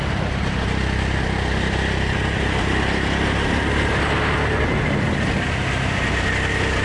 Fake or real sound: real